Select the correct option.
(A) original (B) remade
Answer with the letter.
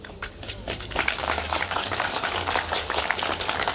B